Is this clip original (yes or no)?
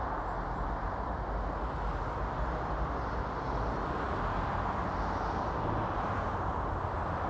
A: yes